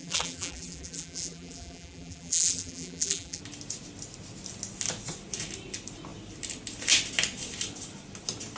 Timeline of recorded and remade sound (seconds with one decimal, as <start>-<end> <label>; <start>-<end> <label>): 0.0-3.4 remade; 3.4-8.6 recorded